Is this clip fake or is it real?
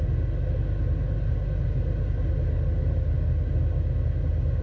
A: real